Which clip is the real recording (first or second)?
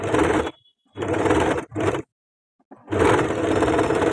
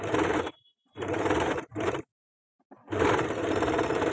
first